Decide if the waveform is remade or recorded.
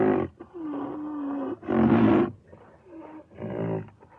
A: recorded